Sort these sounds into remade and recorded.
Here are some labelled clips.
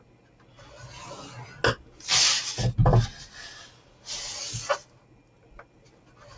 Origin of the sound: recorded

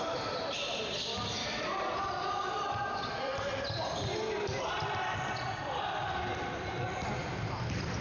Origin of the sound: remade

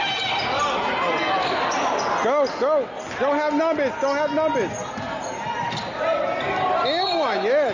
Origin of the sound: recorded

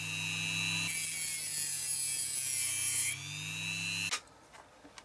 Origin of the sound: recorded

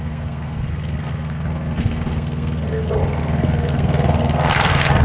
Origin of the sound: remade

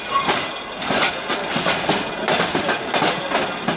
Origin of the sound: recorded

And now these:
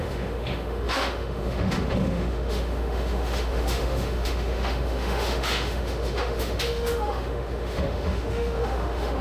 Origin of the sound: remade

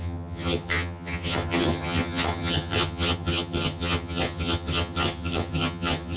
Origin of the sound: remade